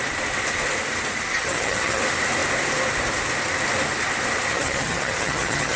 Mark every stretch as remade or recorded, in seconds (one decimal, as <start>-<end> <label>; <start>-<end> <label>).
0.0-1.3 recorded; 1.3-2.0 remade; 2.0-4.5 recorded; 4.5-5.8 remade